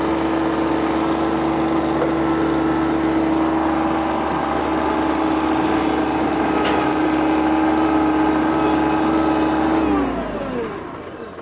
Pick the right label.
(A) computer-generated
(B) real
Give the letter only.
B